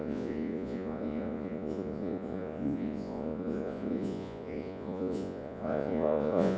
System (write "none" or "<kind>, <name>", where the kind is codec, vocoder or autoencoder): vocoder, Vocos